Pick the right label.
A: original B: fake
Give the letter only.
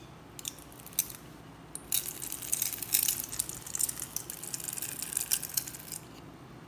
A